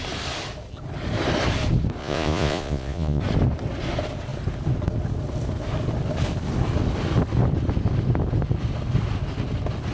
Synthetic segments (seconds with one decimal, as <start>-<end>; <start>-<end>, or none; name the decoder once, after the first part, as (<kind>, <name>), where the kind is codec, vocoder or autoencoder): 2.0-3.2 (vocoder, Vocos)